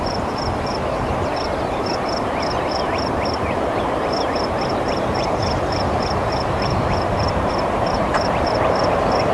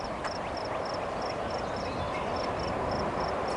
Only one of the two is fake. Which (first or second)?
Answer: first